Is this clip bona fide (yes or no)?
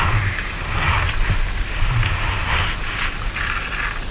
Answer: yes